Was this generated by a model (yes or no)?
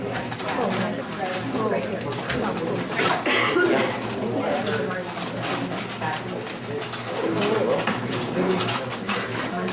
no